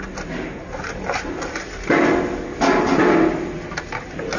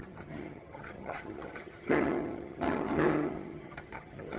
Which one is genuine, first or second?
first